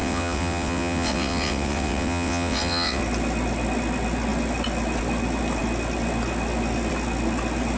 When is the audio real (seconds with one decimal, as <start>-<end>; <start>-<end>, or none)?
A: 3.0-7.8